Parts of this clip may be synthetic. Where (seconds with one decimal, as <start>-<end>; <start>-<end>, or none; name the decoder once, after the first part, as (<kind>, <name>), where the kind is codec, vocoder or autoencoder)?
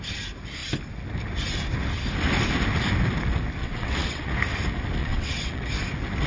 3.6-4.3 (vocoder, WaveNeXt); 5.0-5.7